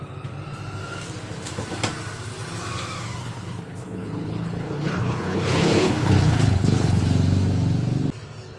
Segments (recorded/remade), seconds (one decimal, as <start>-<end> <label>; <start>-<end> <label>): 0.0-3.2 recorded; 3.2-7.0 remade; 7.0-8.6 recorded